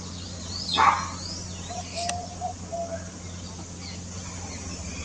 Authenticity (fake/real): real